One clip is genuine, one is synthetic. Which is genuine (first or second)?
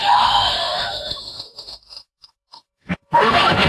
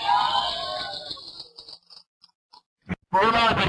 second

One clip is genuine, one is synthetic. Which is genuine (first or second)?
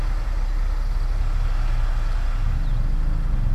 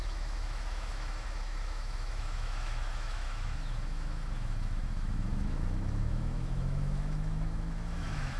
first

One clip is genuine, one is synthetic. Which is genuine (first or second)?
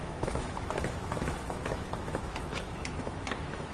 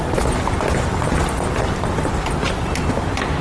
second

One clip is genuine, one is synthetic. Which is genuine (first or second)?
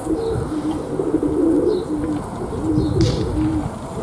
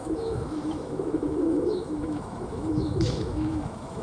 first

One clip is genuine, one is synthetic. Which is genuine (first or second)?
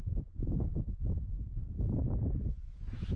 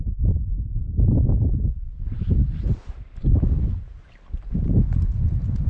second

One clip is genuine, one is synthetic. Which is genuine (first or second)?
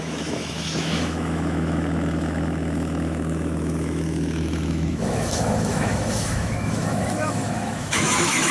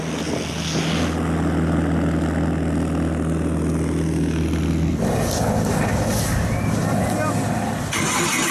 second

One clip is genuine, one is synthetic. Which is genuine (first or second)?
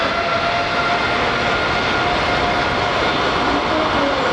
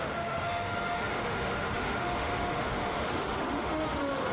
first